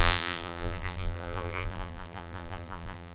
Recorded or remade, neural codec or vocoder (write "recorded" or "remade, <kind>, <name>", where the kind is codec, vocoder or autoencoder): remade, vocoder, BigVGAN v2